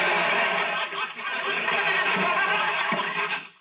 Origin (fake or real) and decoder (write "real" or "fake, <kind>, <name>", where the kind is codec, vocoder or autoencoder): real